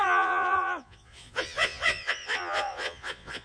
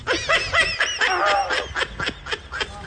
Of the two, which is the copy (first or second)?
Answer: first